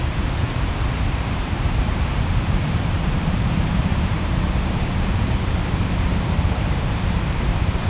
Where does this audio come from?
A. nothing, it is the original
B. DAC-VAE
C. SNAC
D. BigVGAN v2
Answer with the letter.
D